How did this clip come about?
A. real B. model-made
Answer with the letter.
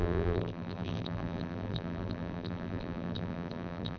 B